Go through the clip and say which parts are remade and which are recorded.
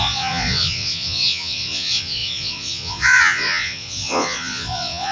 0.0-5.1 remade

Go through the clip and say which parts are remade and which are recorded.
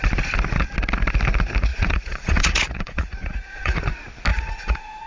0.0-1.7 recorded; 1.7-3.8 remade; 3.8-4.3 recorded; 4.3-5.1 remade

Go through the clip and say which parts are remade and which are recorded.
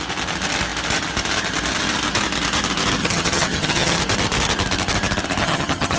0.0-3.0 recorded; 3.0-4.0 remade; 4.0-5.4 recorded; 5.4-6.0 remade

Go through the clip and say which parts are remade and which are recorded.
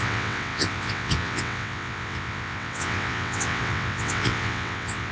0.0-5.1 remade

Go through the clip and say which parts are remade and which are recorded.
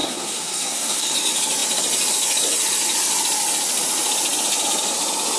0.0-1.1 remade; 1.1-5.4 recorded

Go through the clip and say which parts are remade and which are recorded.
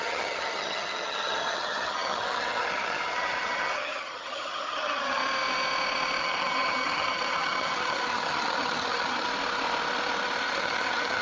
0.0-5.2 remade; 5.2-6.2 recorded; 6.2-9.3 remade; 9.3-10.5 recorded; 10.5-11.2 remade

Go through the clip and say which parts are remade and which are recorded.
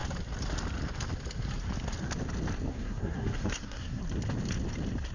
0.0-2.7 recorded; 2.7-4.0 remade; 4.0-5.1 recorded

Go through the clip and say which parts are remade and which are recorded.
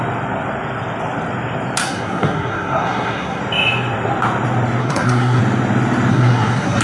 0.0-1.8 recorded; 1.8-3.4 remade; 3.4-4.8 recorded; 4.8-5.4 remade; 5.4-6.1 recorded; 6.1-6.8 remade